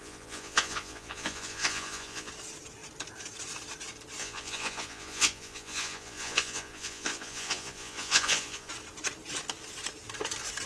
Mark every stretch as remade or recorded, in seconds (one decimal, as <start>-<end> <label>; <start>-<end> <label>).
0.0-2.3 remade; 2.3-4.2 recorded; 4.2-8.7 remade; 8.7-10.7 recorded